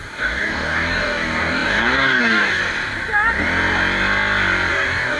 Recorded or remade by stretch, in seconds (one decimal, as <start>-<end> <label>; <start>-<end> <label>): 0.0-2.6 remade; 2.6-4.7 recorded; 4.7-5.2 remade

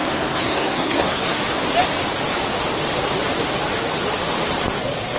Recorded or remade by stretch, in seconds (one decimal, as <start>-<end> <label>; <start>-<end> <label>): 0.0-1.4 remade; 1.4-5.2 recorded

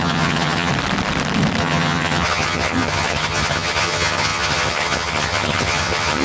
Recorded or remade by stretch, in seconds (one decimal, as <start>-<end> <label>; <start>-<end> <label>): 0.0-0.7 remade; 0.7-1.6 recorded; 1.6-6.2 remade

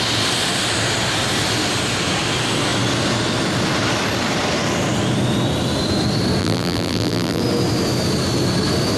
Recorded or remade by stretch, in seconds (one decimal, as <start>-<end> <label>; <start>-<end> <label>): 0.0-6.4 recorded; 6.4-7.4 remade; 7.4-9.0 recorded

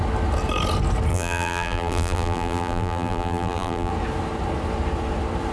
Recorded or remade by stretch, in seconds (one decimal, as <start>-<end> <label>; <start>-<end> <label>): 0.0-1.1 recorded; 1.1-3.9 remade; 3.9-5.5 recorded

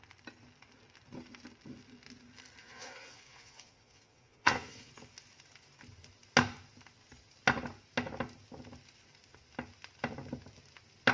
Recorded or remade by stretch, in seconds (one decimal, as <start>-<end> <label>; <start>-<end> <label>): 0.0-2.6 recorded; 2.6-4.9 remade; 4.9-11.1 recorded